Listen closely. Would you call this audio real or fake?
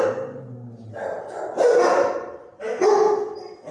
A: real